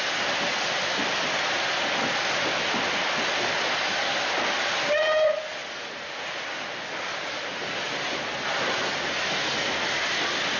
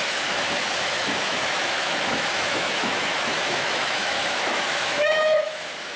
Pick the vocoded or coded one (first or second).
second